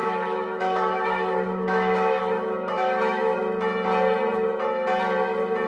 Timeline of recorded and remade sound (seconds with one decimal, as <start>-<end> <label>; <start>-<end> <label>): 0.0-3.4 remade; 3.4-5.7 recorded